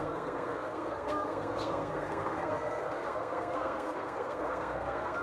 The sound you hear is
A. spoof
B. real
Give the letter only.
A